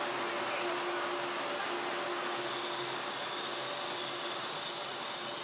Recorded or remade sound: recorded